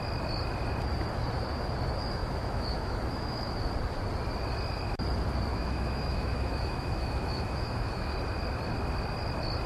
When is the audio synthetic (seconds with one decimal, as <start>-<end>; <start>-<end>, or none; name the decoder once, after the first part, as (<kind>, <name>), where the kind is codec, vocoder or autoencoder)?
2.2-3.7 (autoencoder, DAC-VAE); 5.5-8.1